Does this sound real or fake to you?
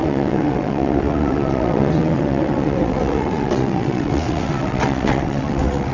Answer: fake